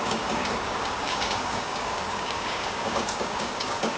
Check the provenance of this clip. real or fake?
fake